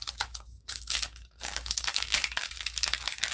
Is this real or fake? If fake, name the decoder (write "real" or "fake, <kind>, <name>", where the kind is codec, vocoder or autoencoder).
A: fake, codec, DAC